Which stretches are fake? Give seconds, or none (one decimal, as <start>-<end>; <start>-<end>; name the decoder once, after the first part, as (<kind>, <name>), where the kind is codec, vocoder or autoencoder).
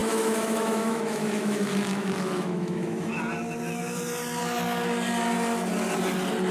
0.0-3.1 (autoencoder, DAC-VAE)